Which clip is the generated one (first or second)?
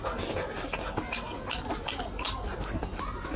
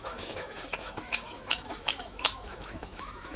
second